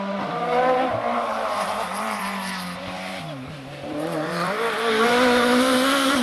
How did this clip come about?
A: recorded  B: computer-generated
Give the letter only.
B